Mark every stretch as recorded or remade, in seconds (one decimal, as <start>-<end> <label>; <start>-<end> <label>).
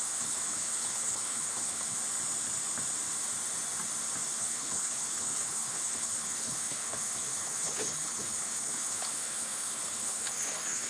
0.0-2.0 remade; 2.0-4.4 recorded; 4.4-10.9 remade